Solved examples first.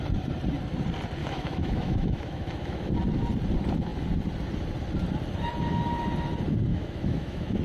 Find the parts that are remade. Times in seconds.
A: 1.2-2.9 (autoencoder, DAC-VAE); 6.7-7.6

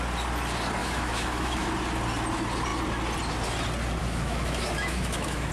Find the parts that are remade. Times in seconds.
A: 0.8-1.7 (autoencoder, DAC-VAE); 4.0-5.5